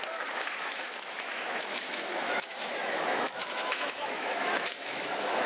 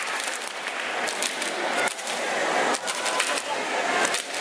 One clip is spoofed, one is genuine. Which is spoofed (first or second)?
first